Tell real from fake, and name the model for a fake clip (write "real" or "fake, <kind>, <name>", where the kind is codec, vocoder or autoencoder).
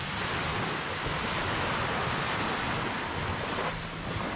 real